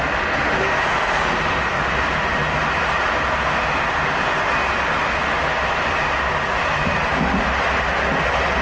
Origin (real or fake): real